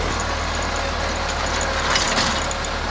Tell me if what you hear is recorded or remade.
recorded